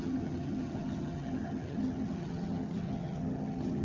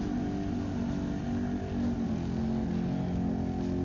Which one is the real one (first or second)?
second